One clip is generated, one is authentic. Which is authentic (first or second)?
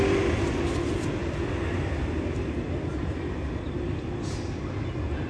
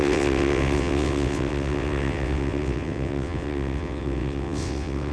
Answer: first